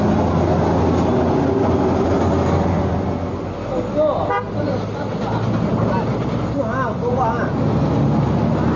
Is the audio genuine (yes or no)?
yes